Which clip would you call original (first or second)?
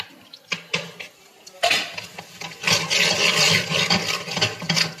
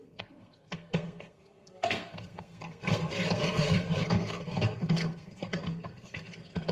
first